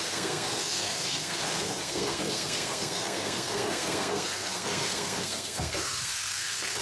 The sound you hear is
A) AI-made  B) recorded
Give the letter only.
A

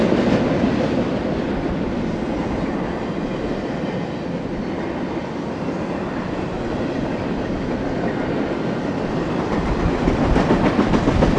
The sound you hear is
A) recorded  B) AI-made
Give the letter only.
A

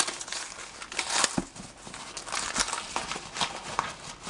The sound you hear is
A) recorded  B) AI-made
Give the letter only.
A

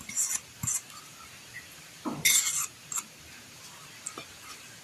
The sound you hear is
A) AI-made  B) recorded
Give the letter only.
B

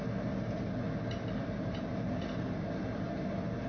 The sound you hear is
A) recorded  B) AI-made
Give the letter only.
A